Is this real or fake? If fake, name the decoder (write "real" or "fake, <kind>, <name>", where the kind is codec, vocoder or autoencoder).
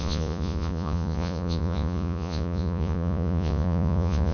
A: fake, vocoder, Vocos